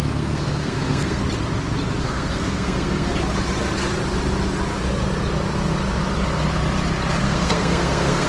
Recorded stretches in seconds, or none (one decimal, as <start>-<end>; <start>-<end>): 1.2-2.0; 3.1-7.2